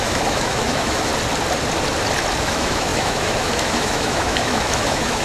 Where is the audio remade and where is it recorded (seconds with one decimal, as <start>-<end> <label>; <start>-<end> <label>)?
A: 0.0-1.1 remade; 1.1-2.4 recorded; 2.4-5.2 remade